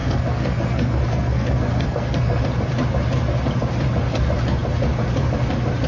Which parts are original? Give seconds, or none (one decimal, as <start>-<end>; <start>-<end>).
2.4-5.9